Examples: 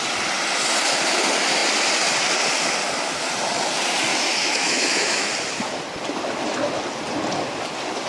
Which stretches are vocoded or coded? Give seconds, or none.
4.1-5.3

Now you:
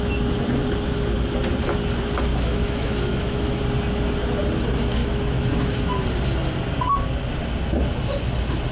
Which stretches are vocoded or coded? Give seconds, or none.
2.3-3.6; 5.0-5.9

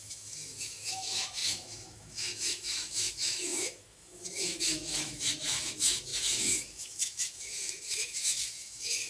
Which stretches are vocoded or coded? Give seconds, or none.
0.0-9.1

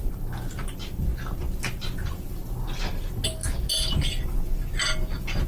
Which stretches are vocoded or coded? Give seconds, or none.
none